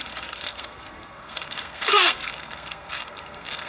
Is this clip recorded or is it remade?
remade